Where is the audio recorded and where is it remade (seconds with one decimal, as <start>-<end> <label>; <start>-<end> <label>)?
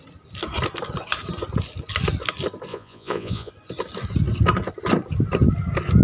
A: 0.0-2.7 recorded; 2.7-3.5 remade; 3.5-6.0 recorded